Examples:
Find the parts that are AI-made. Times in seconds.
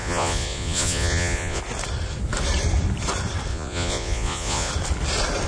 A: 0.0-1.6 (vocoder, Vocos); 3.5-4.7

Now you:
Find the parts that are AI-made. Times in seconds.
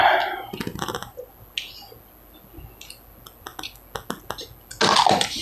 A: 0.7-1.3 (vocoder, BigVGAN v2)